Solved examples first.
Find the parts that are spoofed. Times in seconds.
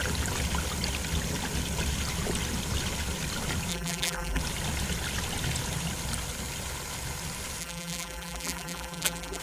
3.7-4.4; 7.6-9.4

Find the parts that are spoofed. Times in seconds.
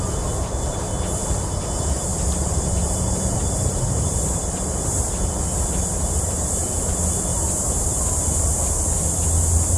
2.1-5.1; 7.3-8.2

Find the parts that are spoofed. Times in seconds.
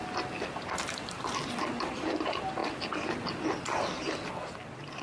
none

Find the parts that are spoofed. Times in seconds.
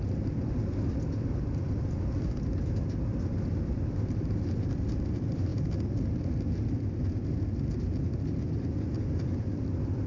0.0-10.1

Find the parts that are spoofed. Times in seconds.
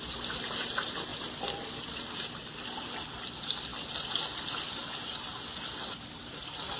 none